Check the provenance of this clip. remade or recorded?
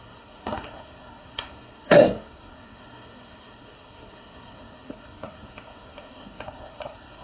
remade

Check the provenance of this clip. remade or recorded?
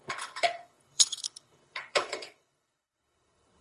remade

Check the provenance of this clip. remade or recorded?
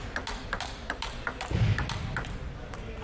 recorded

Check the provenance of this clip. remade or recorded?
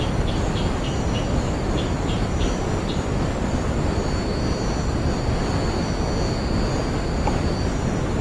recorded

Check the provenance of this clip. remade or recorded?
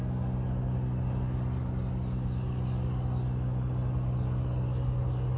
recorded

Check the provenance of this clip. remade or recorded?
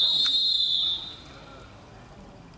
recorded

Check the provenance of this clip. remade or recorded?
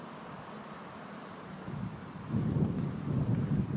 recorded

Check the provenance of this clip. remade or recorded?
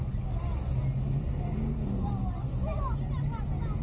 recorded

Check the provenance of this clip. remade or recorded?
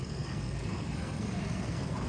remade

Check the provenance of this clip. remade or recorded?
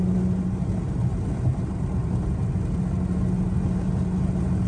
recorded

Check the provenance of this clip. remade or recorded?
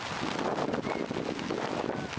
recorded